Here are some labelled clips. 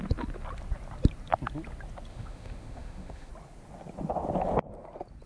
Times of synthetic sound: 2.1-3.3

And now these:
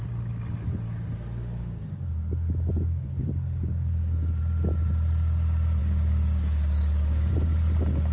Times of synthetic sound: 0.7-4.4; 5.8-7.3

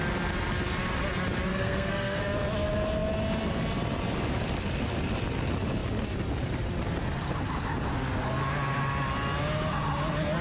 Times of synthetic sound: 1.5-2.2

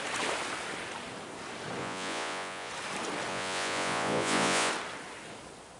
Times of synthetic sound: 1.8-2.7; 3.3-4.7

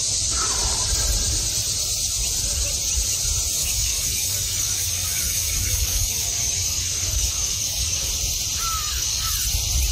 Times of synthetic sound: 3.6-8.1; 8.7-9.3